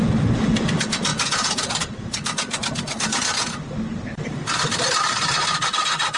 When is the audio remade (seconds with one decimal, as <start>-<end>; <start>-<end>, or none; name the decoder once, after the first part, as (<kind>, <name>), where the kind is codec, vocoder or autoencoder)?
1.1-1.8 (vocoder, Vocos)